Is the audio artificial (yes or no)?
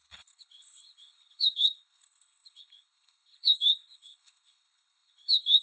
yes